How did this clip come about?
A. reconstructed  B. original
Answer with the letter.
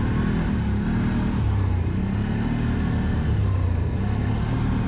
B